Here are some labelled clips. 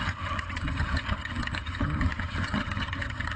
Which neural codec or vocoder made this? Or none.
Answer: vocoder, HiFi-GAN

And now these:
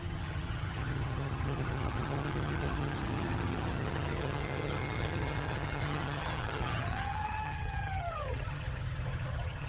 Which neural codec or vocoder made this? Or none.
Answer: vocoder, HiFi-GAN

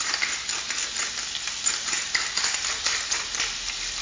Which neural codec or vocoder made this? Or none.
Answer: none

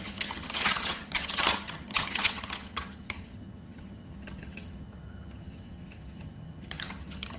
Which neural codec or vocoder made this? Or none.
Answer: vocoder, HiFi-GAN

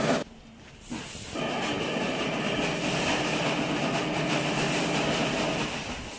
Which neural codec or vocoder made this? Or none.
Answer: none